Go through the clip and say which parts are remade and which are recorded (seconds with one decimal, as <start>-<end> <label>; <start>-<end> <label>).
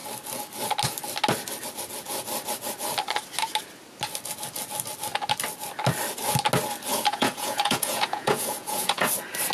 0.0-6.9 recorded; 6.9-9.1 remade; 9.1-9.5 recorded